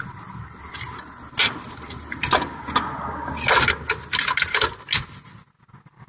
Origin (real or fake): real